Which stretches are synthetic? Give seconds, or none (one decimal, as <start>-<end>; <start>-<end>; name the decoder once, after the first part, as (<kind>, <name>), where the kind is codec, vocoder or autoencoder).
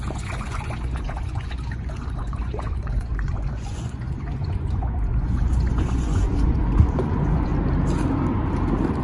0.0-7.5 (vocoder, Vocos)